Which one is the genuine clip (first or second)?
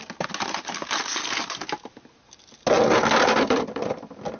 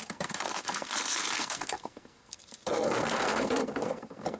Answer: first